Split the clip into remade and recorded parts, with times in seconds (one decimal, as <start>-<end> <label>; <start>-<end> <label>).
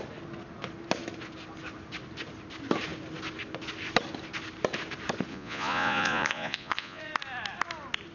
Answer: 0.0-5.3 recorded; 5.3-7.0 remade; 7.0-8.1 recorded